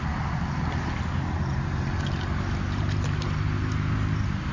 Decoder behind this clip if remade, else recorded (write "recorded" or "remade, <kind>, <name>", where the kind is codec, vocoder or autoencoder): recorded